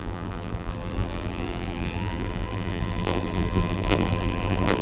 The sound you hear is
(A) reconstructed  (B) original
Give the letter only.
A